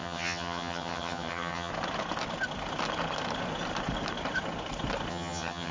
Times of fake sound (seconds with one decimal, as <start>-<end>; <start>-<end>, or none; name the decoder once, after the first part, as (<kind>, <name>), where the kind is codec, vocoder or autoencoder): 0.0-1.7 (vocoder, HiFi-GAN); 5.1-5.7